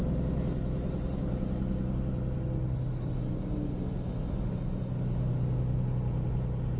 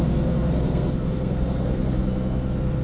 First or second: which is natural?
first